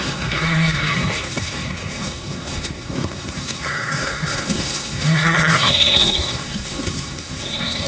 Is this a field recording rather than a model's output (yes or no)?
no